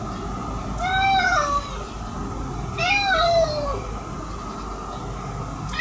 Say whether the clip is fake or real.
real